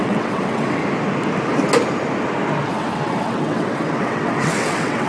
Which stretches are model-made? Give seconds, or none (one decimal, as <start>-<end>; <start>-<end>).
0.0-0.8; 2.7-5.1